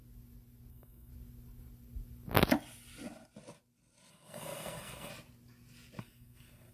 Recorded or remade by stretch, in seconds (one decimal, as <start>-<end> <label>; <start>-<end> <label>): 0.0-0.7 recorded; 0.7-1.1 remade; 1.1-4.1 recorded; 4.1-5.1 remade; 5.1-6.0 recorded; 6.0-6.7 remade